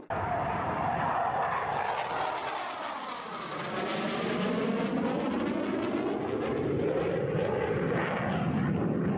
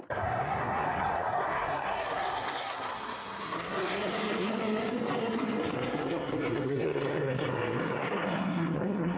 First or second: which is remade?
second